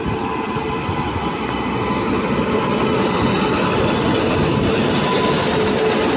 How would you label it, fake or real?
real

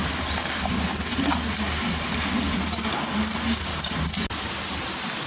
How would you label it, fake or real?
real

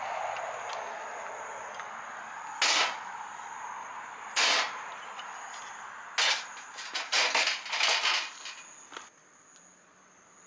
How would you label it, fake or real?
real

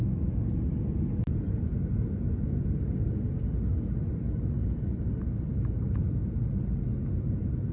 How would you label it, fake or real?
real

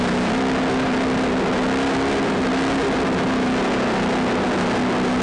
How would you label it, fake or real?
real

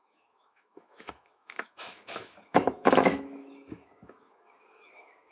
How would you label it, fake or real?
fake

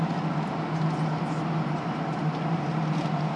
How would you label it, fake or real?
real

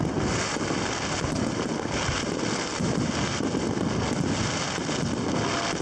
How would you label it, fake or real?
real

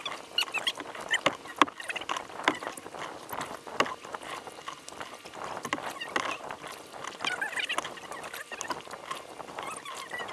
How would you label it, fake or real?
real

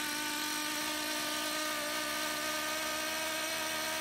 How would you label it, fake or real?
real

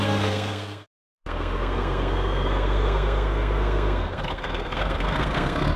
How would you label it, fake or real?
fake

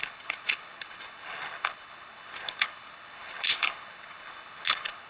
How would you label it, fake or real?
fake